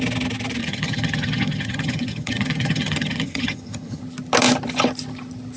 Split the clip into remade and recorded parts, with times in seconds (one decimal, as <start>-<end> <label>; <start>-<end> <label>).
0.0-0.6 recorded; 0.6-4.0 remade; 4.0-5.6 recorded